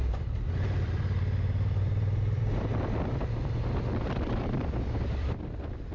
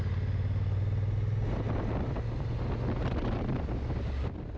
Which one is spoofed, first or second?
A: first